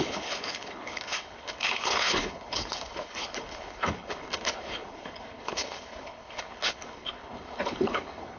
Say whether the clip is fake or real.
fake